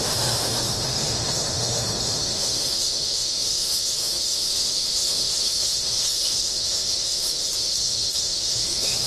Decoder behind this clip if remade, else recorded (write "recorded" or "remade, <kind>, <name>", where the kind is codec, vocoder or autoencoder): remade, autoencoder, DAC-VAE